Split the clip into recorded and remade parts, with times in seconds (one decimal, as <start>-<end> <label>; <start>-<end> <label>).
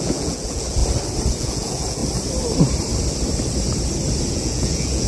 0.0-0.8 remade; 0.8-1.3 recorded; 1.3-2.0 remade; 2.0-4.3 recorded; 4.3-5.1 remade